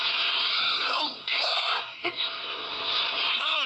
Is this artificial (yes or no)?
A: yes